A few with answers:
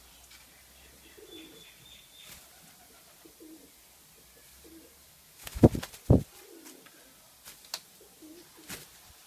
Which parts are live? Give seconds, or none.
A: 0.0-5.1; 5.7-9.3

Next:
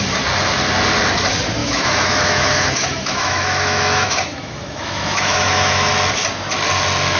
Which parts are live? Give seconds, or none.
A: 0.0-1.6; 5.9-7.2